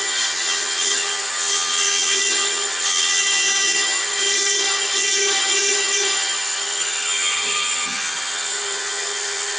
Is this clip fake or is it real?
fake